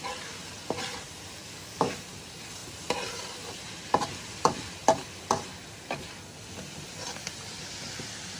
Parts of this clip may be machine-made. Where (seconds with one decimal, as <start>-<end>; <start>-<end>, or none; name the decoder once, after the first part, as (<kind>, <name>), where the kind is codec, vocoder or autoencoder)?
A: 1.4-1.9 (codec, DAC)